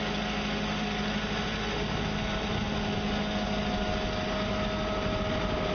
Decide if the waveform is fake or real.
real